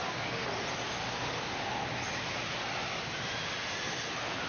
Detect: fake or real real